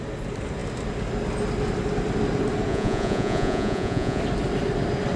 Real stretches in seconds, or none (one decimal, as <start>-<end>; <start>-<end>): 0.0-2.7; 4.2-5.2